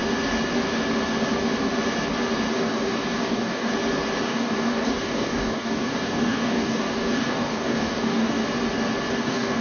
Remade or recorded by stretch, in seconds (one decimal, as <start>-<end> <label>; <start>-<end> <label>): 0.0-2.5 recorded; 2.5-3.7 remade; 3.7-4.2 recorded; 4.2-8.4 remade; 8.4-9.1 recorded; 9.1-9.6 remade